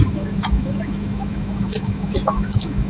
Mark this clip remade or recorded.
remade